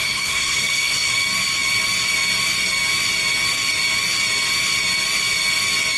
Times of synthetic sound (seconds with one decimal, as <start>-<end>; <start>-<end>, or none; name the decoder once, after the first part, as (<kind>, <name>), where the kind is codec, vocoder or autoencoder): 0.0-1.1 (codec, SNAC)